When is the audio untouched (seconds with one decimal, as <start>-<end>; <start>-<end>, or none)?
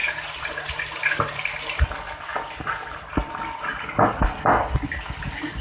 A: 1.5-2.3; 3.3-5.6